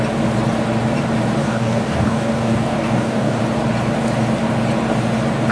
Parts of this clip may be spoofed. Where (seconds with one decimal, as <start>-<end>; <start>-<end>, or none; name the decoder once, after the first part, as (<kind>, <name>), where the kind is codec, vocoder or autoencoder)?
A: 1.4-3.4 (codec, DAC)